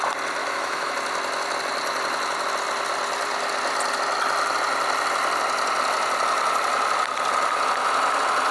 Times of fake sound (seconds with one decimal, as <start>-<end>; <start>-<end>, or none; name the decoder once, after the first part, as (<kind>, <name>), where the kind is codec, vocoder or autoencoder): 0.4-0.9 (autoencoder, DAC-VAE)